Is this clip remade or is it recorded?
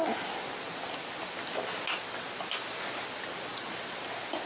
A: recorded